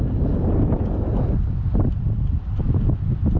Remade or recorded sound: recorded